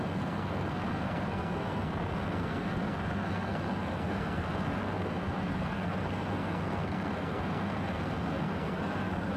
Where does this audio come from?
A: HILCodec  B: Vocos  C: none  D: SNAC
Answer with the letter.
D